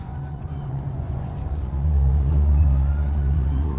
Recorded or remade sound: remade